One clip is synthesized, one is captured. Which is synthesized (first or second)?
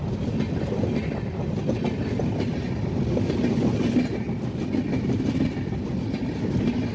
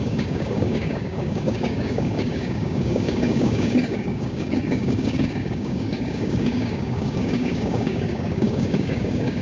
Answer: second